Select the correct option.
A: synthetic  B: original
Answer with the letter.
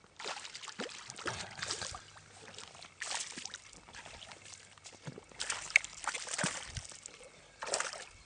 B